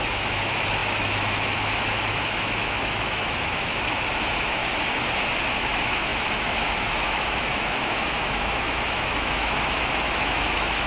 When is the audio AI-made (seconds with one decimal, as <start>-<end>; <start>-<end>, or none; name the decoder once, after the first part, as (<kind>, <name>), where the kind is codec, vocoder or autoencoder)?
0.0-4.6 (autoencoder, DAC-VAE); 5.5-10.9